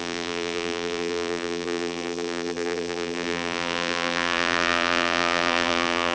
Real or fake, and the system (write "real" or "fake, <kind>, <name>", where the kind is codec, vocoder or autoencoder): fake, vocoder, BigVGAN v2